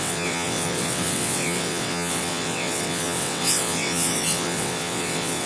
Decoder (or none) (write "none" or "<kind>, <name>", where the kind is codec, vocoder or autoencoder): vocoder, WaveNeXt